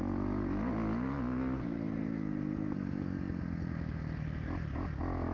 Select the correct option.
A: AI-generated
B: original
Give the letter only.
B